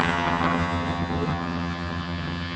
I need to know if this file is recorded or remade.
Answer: remade